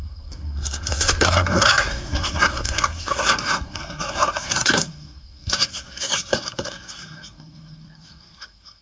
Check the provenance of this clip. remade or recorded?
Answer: remade